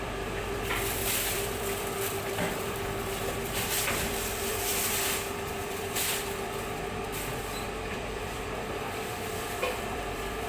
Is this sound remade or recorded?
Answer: remade